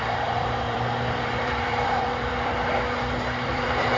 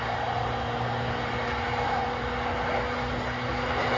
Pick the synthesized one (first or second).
first